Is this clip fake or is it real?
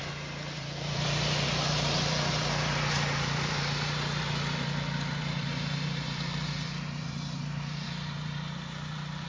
fake